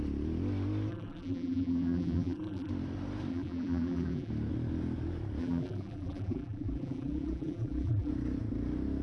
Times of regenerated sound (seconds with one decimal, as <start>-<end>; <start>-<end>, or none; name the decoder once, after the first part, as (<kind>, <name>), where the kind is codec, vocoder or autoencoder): 0.9-2.7 (vocoder, BigVGAN v2); 3.3-4.3; 5.4-8.1